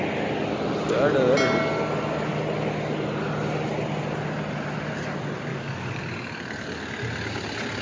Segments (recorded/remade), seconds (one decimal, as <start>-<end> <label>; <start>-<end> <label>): 0.0-5.5 recorded; 5.5-6.0 remade; 6.0-7.8 recorded